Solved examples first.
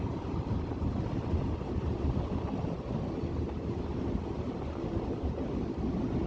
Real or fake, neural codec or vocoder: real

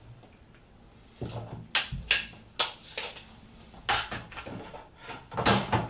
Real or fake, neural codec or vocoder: real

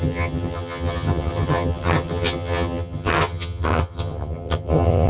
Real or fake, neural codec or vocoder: fake, vocoder, HiFi-GAN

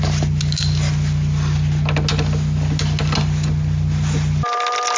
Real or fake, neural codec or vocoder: real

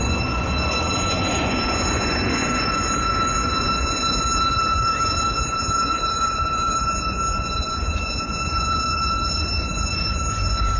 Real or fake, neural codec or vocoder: fake, vocoder, Vocos